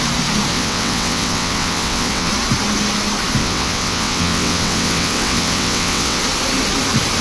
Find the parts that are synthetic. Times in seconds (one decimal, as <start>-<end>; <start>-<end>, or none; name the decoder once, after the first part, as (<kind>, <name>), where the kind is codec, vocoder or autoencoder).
0.5-2.3 (vocoder, WaveNeXt); 3.4-6.2